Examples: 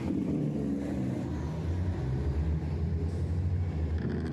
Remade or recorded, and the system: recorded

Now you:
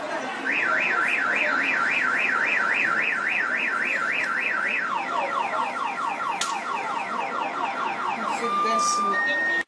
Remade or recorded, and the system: recorded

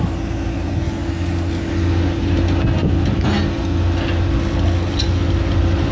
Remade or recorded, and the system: recorded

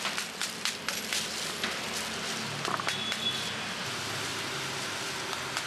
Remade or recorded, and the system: recorded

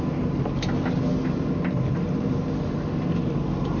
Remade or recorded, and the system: recorded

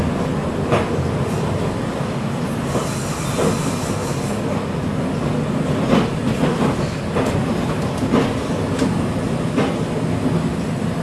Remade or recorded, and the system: recorded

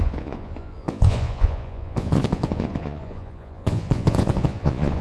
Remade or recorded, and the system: remade, vocoder, Vocos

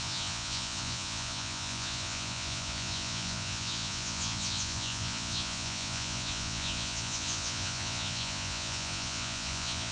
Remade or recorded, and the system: remade, vocoder, Vocos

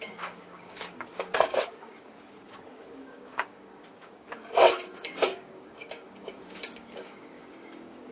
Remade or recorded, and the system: remade, codec, DAC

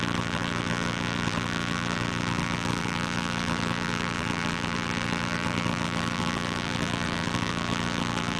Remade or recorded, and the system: remade, vocoder, BigVGAN v2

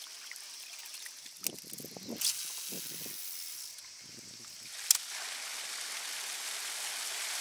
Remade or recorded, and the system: recorded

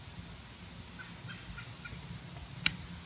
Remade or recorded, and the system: recorded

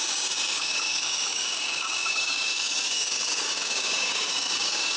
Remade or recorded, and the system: remade, codec, DAC